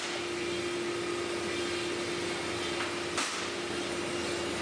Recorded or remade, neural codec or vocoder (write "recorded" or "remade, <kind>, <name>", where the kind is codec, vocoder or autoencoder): recorded